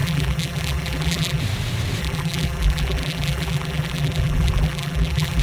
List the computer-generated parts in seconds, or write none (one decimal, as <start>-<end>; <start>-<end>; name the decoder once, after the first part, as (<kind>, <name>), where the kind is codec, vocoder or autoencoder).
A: 0.0-1.4 (vocoder, BigVGAN v2); 2.0-5.4